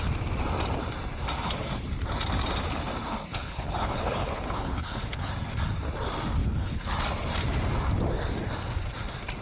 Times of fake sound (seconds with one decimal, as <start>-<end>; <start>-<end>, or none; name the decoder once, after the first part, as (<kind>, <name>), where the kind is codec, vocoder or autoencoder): 3.3-5.3 (codec, HILCodec); 6.4-6.9